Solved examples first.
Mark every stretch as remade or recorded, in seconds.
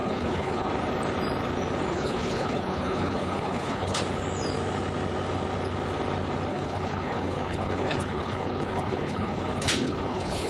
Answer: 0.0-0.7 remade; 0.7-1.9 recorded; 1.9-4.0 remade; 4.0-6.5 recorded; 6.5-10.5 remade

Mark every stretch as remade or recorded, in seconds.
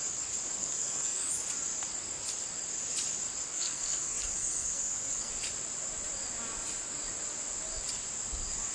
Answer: 0.0-0.6 recorded; 0.6-1.3 remade; 1.3-3.5 recorded; 3.5-5.3 remade; 5.3-8.7 recorded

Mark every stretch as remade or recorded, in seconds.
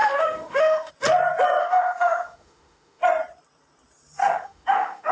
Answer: 0.0-0.9 remade; 0.9-1.6 recorded; 1.6-3.0 remade; 3.0-4.2 recorded; 4.2-5.1 remade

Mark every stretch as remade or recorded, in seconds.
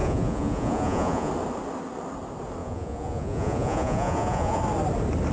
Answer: 0.0-1.3 remade; 1.3-2.6 recorded; 2.6-4.6 remade; 4.6-5.3 recorded